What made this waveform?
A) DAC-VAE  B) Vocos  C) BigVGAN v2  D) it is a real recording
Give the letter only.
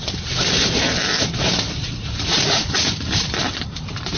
C